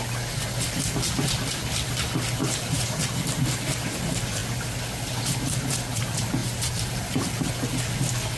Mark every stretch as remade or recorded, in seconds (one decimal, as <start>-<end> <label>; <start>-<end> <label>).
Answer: 0.0-2.4 recorded; 2.4-3.1 remade; 3.1-6.4 recorded; 6.4-7.5 remade; 7.5-8.4 recorded